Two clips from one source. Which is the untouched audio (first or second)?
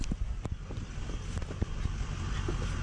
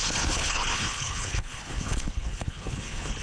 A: first